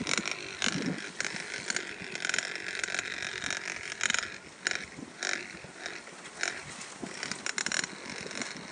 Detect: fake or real real